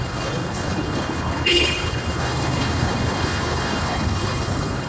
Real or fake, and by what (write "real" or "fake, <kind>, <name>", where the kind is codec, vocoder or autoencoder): fake, codec, HILCodec